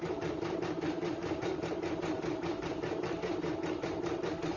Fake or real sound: fake